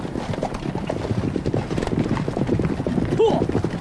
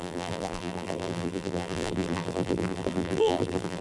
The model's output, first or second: second